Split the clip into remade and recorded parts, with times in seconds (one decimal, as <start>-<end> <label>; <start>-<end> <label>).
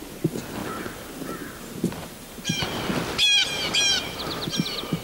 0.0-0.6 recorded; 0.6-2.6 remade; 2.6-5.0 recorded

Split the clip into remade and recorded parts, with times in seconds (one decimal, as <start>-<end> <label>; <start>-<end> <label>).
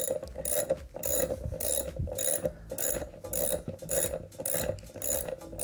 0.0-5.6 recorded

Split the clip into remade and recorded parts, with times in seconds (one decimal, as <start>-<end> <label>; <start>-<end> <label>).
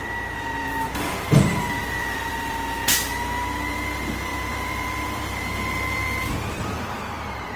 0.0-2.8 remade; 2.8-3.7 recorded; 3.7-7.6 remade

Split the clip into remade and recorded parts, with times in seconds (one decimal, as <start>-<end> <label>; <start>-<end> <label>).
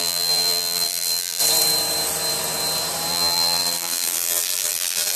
0.0-1.4 remade; 1.4-3.1 recorded; 3.1-5.2 remade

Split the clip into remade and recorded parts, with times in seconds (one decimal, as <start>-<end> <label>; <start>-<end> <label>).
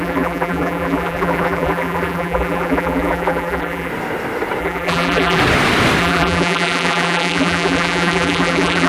0.0-3.9 remade; 3.9-4.6 recorded; 4.6-5.4 remade; 5.4-6.0 recorded; 6.0-8.9 remade